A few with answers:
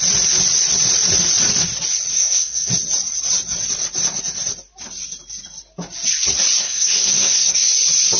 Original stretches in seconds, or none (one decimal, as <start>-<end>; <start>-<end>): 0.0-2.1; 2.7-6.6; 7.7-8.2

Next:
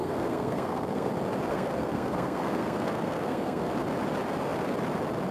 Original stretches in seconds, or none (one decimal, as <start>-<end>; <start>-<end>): 1.1-1.5; 3.7-5.3

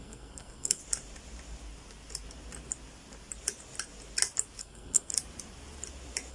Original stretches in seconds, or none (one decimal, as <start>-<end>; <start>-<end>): 0.8-4.6; 5.1-6.3

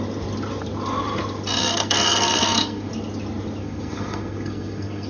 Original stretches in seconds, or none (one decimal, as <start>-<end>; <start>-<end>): 0.0-1.6; 2.9-3.6

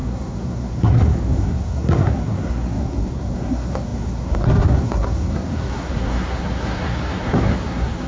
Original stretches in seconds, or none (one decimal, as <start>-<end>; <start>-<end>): none

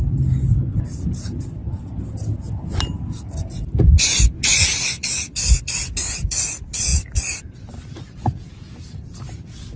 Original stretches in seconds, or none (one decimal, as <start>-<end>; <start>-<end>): 0.0-9.8

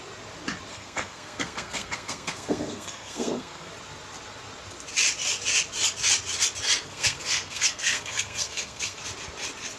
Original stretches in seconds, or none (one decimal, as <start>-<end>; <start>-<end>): 0.0-0.7; 3.7-6.8; 9.0-9.8

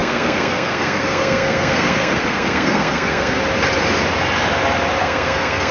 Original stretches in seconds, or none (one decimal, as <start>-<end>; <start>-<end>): 3.4-5.0